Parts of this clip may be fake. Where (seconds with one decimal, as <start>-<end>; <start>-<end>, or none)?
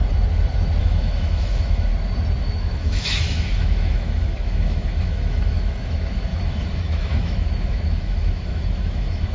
0.8-1.9; 2.4-9.3